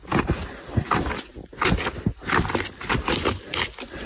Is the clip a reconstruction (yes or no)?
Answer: no